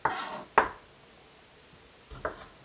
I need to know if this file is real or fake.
real